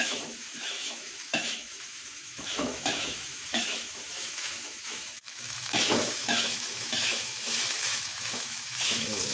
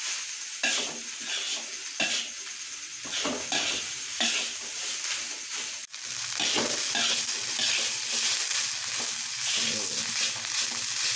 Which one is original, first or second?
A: second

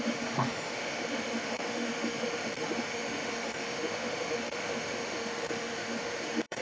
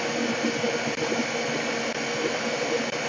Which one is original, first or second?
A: second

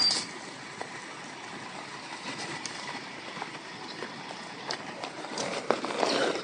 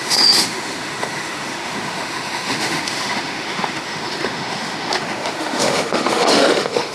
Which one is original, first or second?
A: first